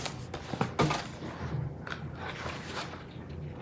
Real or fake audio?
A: real